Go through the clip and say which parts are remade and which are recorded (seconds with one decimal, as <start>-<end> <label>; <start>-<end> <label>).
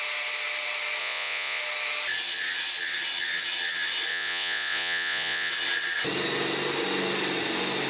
0.0-1.0 recorded; 1.0-1.6 remade; 1.6-4.1 recorded; 4.1-5.5 remade; 5.5-7.9 recorded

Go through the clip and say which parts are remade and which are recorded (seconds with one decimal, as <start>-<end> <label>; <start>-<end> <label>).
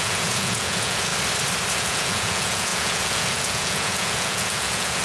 0.0-1.1 remade; 1.1-1.7 recorded; 1.7-5.0 remade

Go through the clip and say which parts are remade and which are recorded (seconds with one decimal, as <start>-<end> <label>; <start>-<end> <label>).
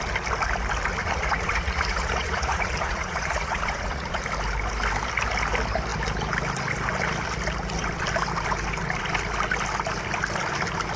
0.0-1.0 recorded; 1.0-4.2 remade; 4.2-11.0 recorded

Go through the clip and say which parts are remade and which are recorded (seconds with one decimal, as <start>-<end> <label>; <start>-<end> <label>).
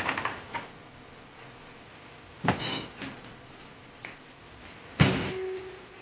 0.0-0.5 recorded; 0.5-1.9 remade; 1.9-3.1 recorded; 3.1-4.4 remade; 4.4-6.0 recorded